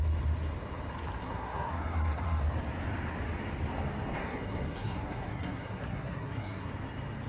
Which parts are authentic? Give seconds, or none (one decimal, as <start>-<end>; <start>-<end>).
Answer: 0.0-1.2; 2.4-4.2; 6.7-7.3